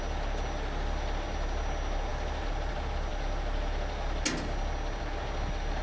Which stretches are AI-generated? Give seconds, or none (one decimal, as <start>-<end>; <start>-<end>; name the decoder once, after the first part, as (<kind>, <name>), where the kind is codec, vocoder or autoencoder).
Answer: none